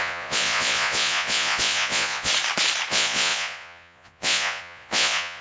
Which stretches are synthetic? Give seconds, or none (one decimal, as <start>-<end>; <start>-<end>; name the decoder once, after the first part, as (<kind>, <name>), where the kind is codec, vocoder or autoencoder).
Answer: 0.0-2.3 (vocoder, Vocos); 2.9-5.4